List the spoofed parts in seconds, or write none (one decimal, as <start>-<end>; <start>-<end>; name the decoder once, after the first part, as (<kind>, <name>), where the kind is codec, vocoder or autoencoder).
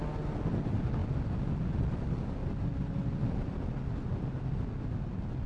none